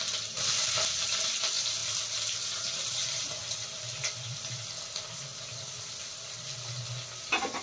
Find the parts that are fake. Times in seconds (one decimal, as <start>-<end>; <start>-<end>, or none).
1.8-4.8; 5.3-6.4